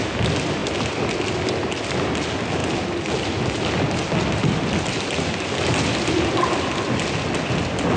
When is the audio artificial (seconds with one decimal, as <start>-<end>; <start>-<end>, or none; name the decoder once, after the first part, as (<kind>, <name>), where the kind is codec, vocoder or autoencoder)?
none